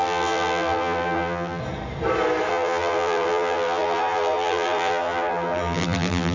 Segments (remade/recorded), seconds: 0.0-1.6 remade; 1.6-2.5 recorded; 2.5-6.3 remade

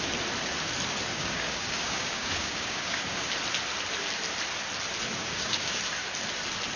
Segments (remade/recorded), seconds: 0.0-1.1 recorded; 1.1-3.3 remade; 3.3-5.2 recorded; 5.2-5.8 remade; 5.8-6.8 recorded

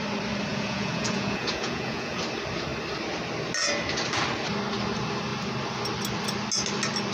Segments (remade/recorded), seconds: 0.0-0.5 recorded; 0.5-2.2 remade; 2.2-7.1 recorded

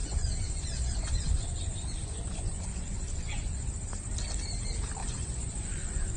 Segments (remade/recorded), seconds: 0.0-3.7 remade; 3.7-5.0 recorded; 5.0-6.2 remade

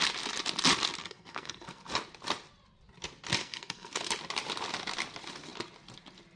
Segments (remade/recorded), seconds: 0.0-1.0 recorded; 1.0-1.9 remade; 1.9-3.4 recorded; 3.4-4.1 remade; 4.1-6.4 recorded

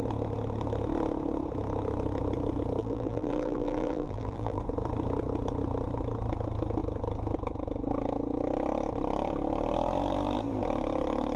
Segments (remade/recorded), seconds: 0.0-2.8 recorded; 2.8-4.6 remade; 4.6-11.4 recorded

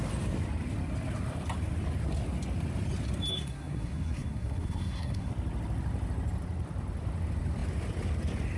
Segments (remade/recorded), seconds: 0.0-3.3 recorded; 3.3-5.3 remade; 5.3-8.6 recorded